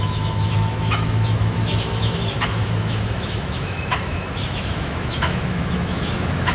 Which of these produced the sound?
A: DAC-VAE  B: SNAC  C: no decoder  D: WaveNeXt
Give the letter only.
A